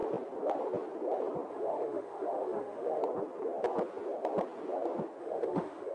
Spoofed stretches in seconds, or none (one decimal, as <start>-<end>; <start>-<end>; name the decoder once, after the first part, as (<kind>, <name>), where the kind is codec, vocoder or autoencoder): 1.5-3.0 (autoencoder, DAC-VAE); 5.2-5.9